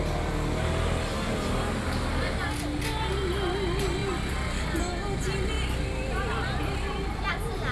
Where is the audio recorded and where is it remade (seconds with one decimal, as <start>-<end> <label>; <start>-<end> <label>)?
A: 0.0-7.7 recorded